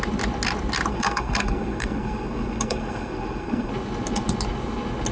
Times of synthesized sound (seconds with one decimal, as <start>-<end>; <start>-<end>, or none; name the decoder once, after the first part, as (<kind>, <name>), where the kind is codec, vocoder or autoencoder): 0.9-3.7 (codec, SNAC)